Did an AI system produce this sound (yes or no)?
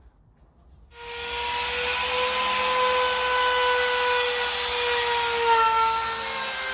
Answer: no